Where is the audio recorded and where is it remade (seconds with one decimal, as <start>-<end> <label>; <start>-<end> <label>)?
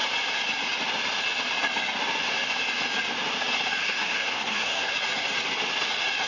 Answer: 0.0-3.8 recorded; 3.8-4.9 remade; 4.9-6.3 recorded